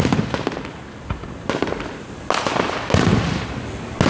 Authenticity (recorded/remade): recorded